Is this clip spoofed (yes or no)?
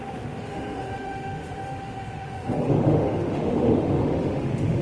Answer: yes